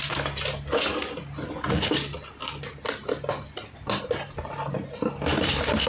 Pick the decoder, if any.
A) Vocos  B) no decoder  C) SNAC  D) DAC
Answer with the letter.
B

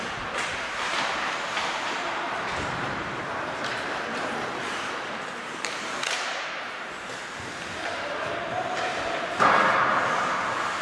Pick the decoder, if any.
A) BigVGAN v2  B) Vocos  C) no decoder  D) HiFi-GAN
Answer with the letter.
A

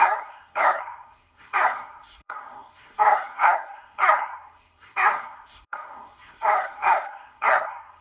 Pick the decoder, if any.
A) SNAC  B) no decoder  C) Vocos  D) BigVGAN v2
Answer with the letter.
A